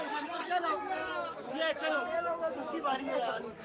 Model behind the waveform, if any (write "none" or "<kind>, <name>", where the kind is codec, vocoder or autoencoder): codec, DAC